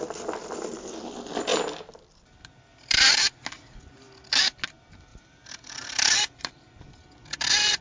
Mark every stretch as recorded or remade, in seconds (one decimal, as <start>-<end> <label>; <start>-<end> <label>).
0.0-5.1 recorded; 5.1-6.5 remade; 6.5-7.8 recorded